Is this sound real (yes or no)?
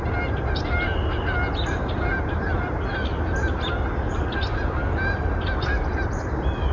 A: yes